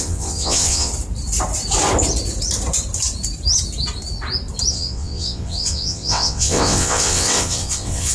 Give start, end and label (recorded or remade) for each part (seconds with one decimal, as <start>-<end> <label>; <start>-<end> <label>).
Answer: 0.0-0.9 remade; 0.9-4.7 recorded; 4.7-8.1 remade